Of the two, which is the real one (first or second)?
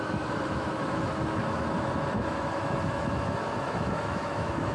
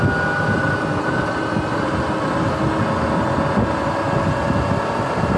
second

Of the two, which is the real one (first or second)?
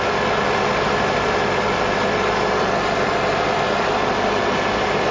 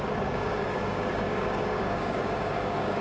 first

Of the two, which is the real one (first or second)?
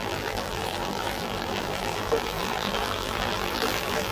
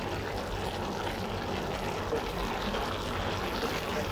second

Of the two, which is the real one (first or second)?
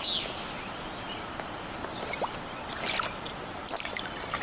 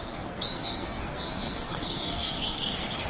first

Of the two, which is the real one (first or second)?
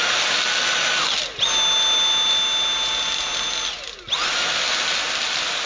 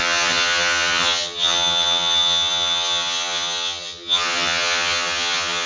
first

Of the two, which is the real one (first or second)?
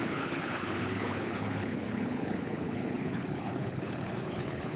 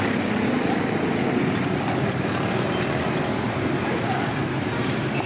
second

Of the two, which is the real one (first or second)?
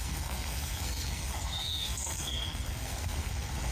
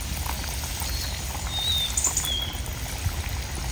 second